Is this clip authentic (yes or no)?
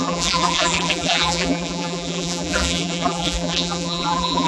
no